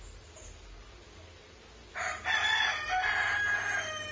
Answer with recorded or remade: recorded